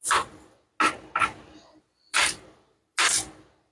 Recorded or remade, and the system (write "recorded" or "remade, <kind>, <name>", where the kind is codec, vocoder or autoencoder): recorded